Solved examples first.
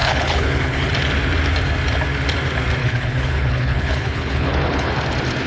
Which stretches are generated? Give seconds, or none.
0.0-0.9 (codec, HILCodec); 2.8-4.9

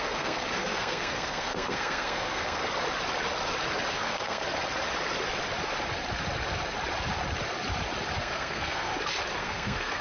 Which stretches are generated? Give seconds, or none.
0.0-2.6 (codec, SNAC); 3.9-4.4; 8.2-8.9; 9.4-10.0